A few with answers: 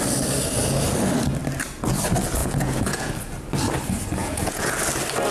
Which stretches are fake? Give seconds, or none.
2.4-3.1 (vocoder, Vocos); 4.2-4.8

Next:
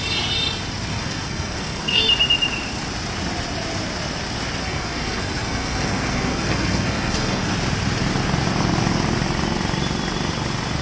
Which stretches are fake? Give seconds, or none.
0.9-2.0 (codec, SNAC); 4.6-7.5

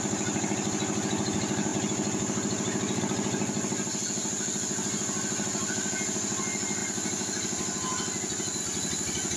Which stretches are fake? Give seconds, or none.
none

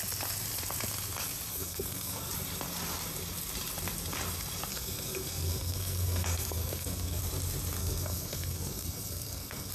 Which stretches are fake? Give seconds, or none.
1.5-2.3 (codec, SNAC); 4.7-7.2; 7.8-9.7

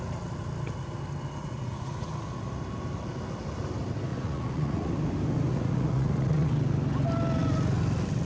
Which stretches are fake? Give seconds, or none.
1.4-2.1 (vocoder, Vocos); 4.1-4.9; 5.5-6.5

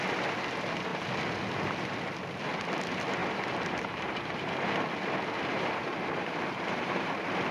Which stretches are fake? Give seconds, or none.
3.2-4.5 (vocoder, BigVGAN v2); 5.5-7.1

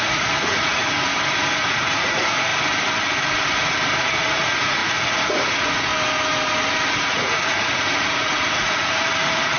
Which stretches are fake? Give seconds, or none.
0.0-1.1 (vocoder, Vocos); 1.6-2.5; 4.0-5.9; 7.0-9.6

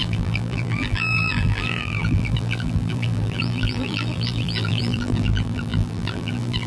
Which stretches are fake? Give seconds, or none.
0.0-6.7 (vocoder, BigVGAN v2)